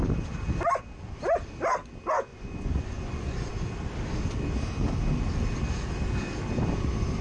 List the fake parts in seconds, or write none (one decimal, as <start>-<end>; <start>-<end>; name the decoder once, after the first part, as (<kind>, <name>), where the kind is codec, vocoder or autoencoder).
2.3-3.5 (vocoder, Vocos)

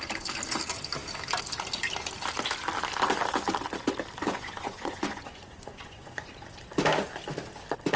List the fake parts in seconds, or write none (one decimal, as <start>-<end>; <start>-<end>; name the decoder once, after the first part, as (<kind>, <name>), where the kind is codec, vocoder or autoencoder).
4.2-6.3 (vocoder, Vocos)

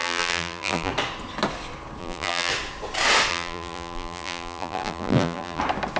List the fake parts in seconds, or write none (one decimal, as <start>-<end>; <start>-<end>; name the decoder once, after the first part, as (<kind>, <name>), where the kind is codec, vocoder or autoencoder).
0.0-0.9 (vocoder, BigVGAN v2); 2.0-2.5; 3.3-5.6

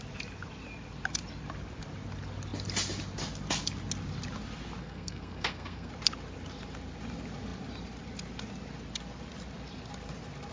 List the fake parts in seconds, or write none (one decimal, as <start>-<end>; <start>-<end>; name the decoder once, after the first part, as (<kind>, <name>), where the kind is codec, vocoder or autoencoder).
4.8-5.9 (codec, SNAC)

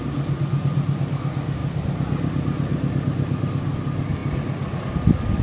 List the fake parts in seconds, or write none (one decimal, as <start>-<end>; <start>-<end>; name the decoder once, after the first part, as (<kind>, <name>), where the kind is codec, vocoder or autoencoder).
none

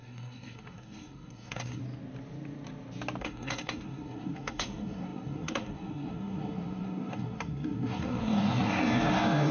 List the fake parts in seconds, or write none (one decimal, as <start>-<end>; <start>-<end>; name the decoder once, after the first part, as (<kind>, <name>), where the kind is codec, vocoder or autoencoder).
0.0-1.8 (codec, SNAC); 3.2-9.5